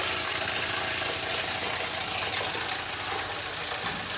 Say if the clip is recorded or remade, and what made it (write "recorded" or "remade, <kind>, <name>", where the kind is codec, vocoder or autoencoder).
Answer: recorded